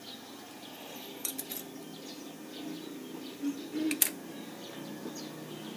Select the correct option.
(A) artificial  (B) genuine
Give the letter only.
B